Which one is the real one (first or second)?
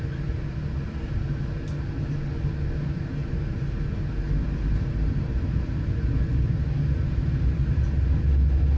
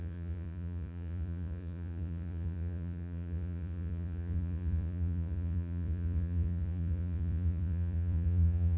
first